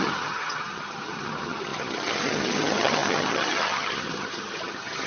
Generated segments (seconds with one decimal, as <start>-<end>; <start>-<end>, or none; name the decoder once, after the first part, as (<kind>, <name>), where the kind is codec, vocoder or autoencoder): 0.0-5.1 (vocoder, HiFi-GAN)